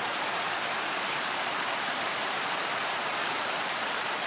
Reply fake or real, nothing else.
fake